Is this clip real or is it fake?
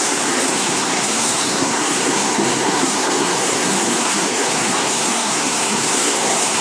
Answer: fake